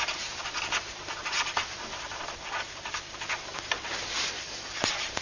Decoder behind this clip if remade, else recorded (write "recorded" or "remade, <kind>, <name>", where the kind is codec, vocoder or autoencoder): remade, vocoder, BigVGAN v2